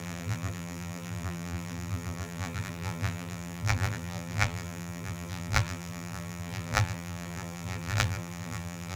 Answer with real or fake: fake